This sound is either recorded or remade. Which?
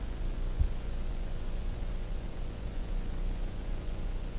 remade